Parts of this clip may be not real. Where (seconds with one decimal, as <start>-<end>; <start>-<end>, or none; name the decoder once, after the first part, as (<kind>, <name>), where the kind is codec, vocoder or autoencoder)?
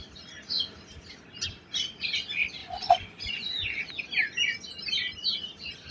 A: 2.6-3.8 (vocoder, Vocos)